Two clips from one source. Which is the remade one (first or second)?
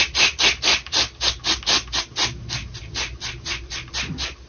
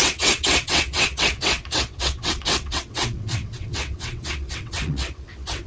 second